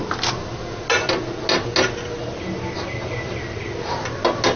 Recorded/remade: recorded